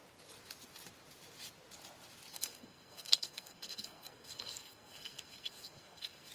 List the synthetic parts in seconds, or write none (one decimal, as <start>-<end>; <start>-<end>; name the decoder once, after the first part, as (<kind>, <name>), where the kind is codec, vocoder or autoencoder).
2.3-6.3 (codec, SNAC)